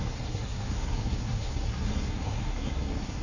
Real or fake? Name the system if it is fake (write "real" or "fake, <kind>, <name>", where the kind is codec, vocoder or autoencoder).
fake, codec, SNAC